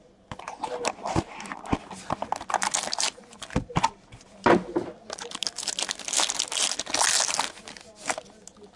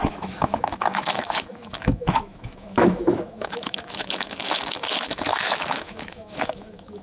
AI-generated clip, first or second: second